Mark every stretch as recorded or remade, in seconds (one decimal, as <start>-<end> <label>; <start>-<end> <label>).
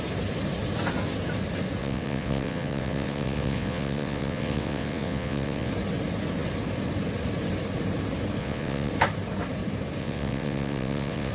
0.0-1.8 recorded; 1.8-5.7 remade; 5.7-8.4 recorded; 8.4-8.9 remade; 8.9-10.0 recorded; 10.0-11.3 remade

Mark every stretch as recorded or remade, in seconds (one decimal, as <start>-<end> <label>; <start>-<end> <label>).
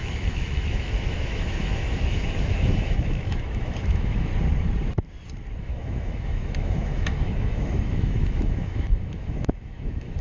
0.0-4.3 remade; 4.3-5.6 recorded; 5.6-10.2 remade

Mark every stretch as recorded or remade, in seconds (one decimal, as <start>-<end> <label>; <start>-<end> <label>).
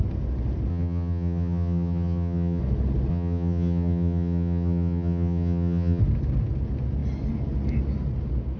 0.0-0.7 recorded; 0.7-2.6 remade; 2.6-3.1 recorded; 3.1-6.0 remade; 6.0-8.6 recorded